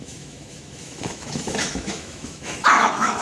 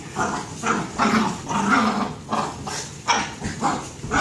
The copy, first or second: first